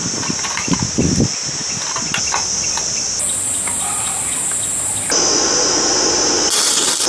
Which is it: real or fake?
real